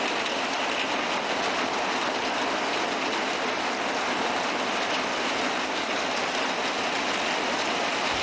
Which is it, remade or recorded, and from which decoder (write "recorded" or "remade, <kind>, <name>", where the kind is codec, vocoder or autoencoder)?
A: recorded